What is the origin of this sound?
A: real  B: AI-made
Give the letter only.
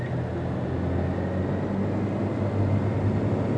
A